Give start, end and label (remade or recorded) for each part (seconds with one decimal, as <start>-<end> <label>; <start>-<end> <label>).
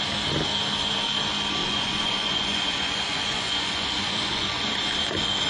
0.0-1.6 recorded; 1.6-4.9 remade; 4.9-5.5 recorded